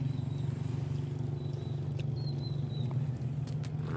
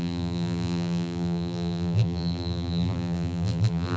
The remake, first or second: second